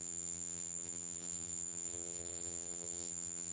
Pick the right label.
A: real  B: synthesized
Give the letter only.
B